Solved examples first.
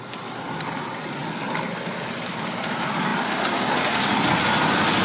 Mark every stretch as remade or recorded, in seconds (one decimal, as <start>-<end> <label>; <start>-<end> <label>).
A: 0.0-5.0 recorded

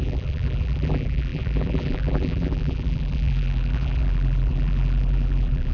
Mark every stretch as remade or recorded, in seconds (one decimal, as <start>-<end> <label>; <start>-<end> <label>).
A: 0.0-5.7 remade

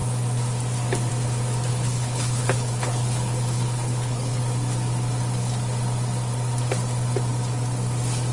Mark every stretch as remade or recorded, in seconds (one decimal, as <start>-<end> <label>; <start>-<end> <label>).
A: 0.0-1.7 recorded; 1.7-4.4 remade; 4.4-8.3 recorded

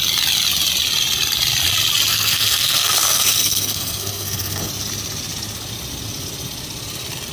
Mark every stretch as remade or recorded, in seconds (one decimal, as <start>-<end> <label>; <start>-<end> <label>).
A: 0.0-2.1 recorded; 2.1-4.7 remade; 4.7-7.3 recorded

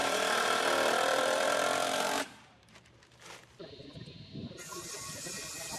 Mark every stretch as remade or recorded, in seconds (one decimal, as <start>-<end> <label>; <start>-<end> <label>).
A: 0.0-0.6 remade; 0.6-1.1 recorded; 1.1-4.6 remade; 4.6-5.8 recorded

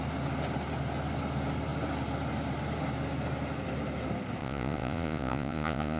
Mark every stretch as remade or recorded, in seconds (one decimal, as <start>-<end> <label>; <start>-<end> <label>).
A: 0.0-4.4 recorded; 4.4-6.0 remade

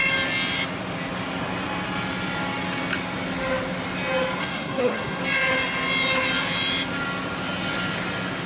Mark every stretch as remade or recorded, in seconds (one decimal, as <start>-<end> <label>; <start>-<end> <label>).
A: 0.0-4.4 recorded; 4.4-5.2 remade; 5.2-8.5 recorded